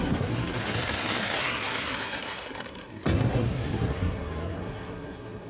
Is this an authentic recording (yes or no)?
no